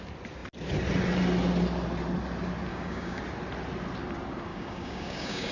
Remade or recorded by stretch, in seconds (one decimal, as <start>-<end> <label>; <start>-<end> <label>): 0.0-2.7 recorded; 2.7-3.2 remade; 3.2-4.5 recorded; 4.5-5.5 remade